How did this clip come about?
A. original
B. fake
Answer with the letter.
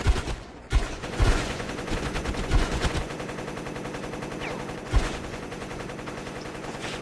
B